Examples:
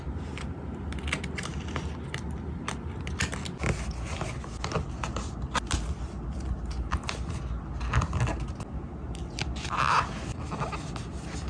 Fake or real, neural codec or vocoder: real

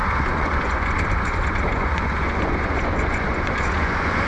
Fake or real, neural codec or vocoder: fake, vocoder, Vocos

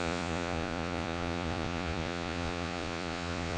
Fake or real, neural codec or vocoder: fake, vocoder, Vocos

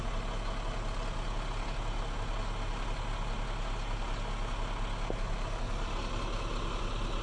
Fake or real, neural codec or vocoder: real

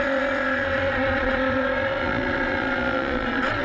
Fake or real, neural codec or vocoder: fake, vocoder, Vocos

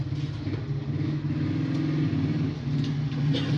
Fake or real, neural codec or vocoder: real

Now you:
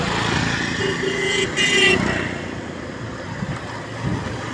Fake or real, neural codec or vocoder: real